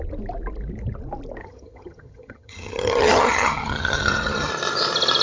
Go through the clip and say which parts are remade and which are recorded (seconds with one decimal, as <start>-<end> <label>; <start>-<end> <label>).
0.0-1.4 recorded; 1.4-4.5 remade; 4.5-5.2 recorded